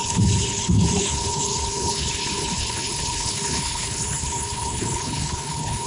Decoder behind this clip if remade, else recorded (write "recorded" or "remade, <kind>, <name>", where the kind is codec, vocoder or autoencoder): remade, codec, HILCodec